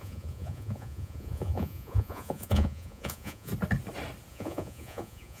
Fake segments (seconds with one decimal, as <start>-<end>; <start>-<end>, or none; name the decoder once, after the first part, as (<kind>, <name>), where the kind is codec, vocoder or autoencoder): 0.0-3.5 (vocoder, Vocos); 4.3-5.4